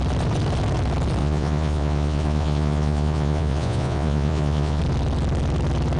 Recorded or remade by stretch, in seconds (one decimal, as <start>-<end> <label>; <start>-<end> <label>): 0.0-1.2 recorded; 1.2-4.8 remade; 4.8-6.0 recorded